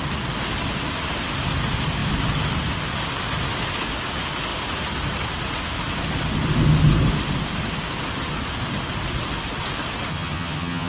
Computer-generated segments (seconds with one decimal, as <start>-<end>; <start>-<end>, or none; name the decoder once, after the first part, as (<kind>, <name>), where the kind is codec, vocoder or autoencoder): 10.1-10.9 (vocoder, HiFi-GAN)

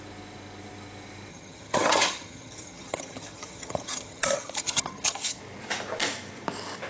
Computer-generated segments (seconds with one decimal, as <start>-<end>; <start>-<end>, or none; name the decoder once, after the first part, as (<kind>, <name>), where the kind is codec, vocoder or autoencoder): 1.3-5.4 (vocoder, HiFi-GAN)

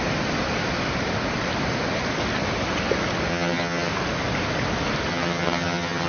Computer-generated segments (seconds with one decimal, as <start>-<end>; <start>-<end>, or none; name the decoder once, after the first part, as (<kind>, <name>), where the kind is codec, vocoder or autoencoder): 3.3-3.9 (vocoder, HiFi-GAN); 5.1-6.1

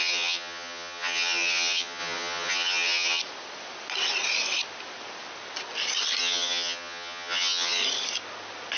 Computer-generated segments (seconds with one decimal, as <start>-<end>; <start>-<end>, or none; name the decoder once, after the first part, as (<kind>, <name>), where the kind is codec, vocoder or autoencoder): 0.0-3.2 (vocoder, HiFi-GAN); 6.2-7.8

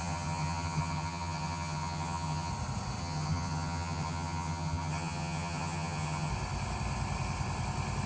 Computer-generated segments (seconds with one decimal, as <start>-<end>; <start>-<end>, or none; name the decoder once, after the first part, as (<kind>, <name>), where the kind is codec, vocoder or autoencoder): 0.0-2.5 (vocoder, HiFi-GAN); 3.0-6.3